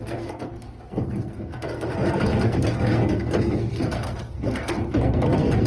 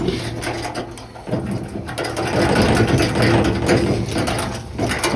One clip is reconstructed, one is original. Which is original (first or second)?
second